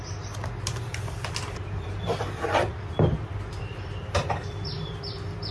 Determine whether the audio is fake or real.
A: fake